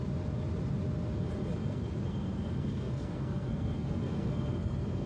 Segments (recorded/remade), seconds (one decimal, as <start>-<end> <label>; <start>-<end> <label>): 0.0-1.6 recorded; 1.6-5.1 remade